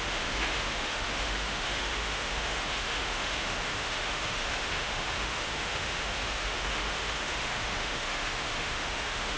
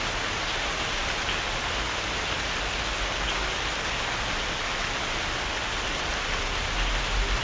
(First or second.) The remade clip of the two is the first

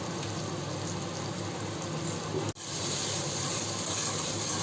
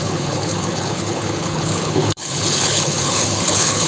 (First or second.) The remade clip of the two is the second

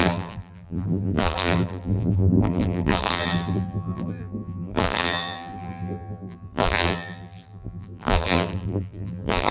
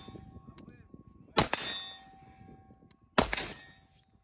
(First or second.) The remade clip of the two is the first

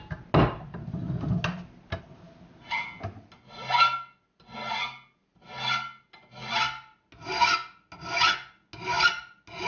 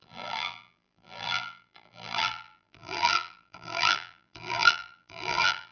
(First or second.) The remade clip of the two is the second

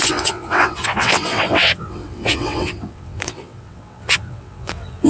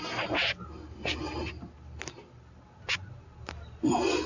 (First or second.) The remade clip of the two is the first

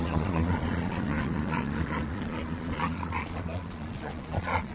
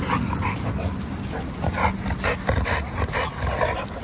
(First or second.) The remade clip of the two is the first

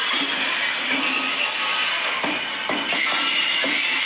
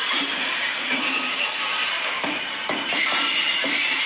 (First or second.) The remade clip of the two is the second